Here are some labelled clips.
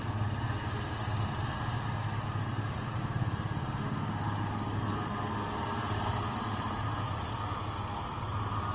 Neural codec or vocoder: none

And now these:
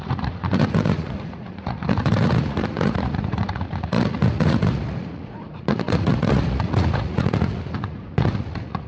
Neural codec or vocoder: vocoder, Vocos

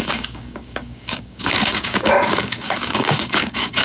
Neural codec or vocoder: codec, DAC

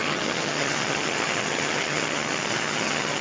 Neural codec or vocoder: vocoder, HiFi-GAN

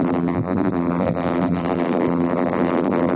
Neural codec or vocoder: vocoder, BigVGAN v2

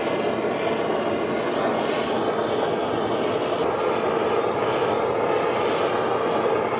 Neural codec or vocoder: none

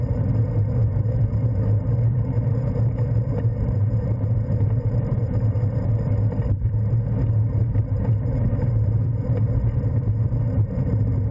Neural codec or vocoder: vocoder, BigVGAN v2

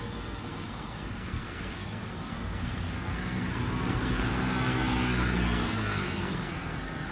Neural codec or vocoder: codec, SNAC